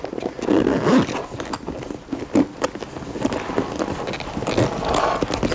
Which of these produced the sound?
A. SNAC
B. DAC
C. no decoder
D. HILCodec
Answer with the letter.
C